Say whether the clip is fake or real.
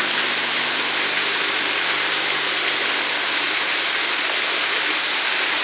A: real